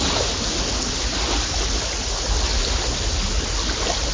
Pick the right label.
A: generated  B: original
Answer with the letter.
B